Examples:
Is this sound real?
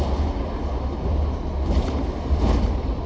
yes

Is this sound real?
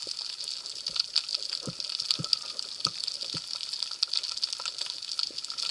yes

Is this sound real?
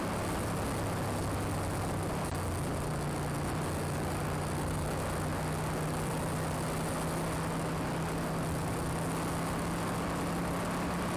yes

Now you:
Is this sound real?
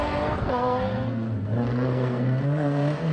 no